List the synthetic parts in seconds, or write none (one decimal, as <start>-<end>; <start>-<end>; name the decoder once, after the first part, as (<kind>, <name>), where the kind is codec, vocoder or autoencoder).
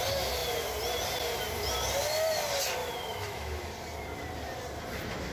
2.8-3.7 (autoencoder, DAC-VAE)